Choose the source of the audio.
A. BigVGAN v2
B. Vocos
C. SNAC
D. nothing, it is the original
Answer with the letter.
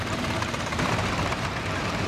A